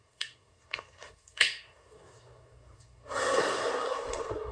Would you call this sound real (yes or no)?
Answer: no